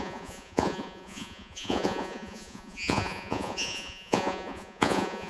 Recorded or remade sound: remade